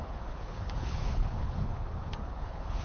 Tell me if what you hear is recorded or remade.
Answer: remade